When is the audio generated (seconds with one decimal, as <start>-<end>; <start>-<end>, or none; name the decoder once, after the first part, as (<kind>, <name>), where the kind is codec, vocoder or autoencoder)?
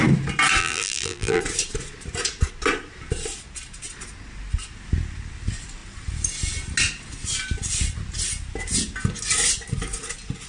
0.6-1.4 (vocoder, BigVGAN v2)